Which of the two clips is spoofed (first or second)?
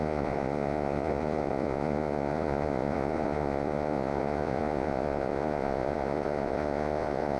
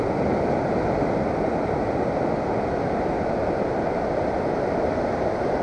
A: first